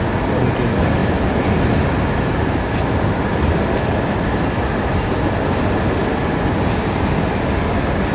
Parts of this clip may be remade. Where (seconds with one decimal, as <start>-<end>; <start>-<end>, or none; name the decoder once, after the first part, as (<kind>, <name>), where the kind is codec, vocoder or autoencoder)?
none

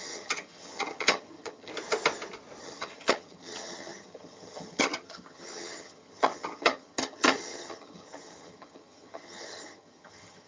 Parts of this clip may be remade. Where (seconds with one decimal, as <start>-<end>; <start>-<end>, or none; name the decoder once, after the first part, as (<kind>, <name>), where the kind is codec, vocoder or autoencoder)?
0.0-1.7 (vocoder, HiFi-GAN); 2.6-10.5